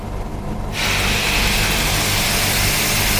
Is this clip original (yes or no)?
yes